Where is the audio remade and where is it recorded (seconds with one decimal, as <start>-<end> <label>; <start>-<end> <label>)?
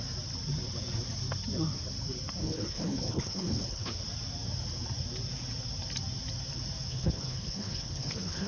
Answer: 0.0-2.4 recorded; 2.4-3.9 remade; 3.9-6.9 recorded; 6.9-8.5 remade